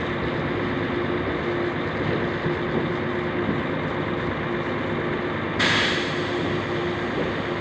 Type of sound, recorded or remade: recorded